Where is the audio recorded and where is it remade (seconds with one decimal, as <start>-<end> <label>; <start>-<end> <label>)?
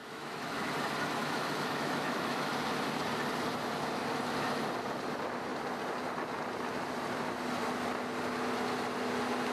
0.0-0.7 remade; 0.7-1.2 recorded; 1.2-2.5 remade; 2.5-9.5 recorded